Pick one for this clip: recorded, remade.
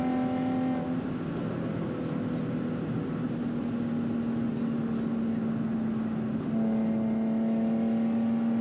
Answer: recorded